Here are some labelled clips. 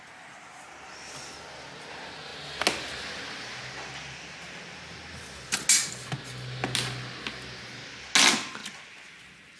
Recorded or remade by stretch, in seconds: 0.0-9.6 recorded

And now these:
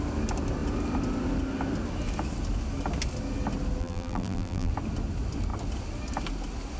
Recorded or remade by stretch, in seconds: 0.0-3.8 recorded; 3.8-4.7 remade; 4.7-6.8 recorded